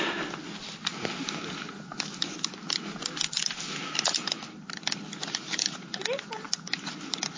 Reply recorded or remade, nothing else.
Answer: recorded